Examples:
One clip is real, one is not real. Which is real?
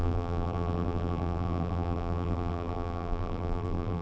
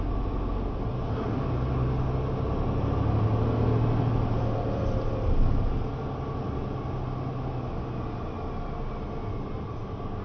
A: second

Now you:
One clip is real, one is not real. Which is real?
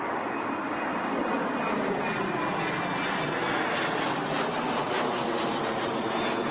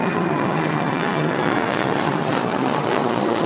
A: first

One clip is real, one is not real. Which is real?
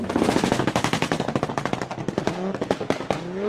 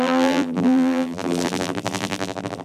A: first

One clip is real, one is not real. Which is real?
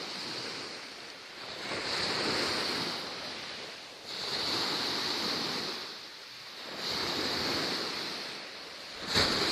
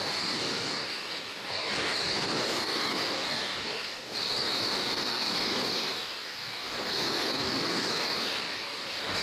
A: first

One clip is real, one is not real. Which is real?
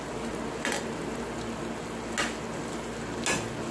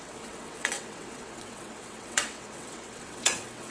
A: first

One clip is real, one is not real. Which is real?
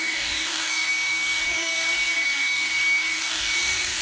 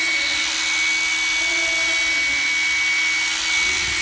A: second